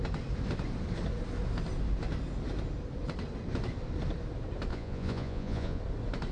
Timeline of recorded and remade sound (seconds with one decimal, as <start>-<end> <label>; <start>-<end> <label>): 0.0-4.7 recorded; 4.7-5.8 remade; 5.8-6.3 recorded